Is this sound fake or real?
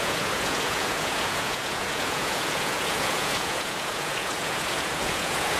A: fake